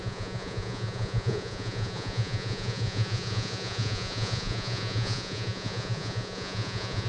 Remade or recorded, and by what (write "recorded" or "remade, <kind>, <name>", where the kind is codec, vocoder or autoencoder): remade, vocoder, Vocos